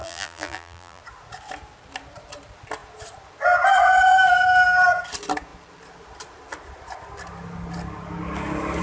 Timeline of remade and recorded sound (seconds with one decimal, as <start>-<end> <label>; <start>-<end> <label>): 0.0-1.0 remade; 1.0-8.8 recorded